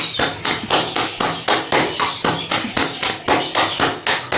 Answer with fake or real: real